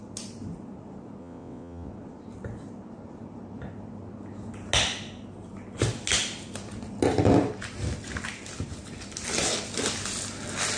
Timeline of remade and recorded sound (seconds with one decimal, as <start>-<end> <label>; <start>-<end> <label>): 0.0-1.2 recorded; 1.2-1.9 remade; 1.9-10.8 recorded